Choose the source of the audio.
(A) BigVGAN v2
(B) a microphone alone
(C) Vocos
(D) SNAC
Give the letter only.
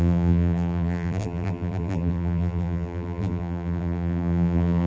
A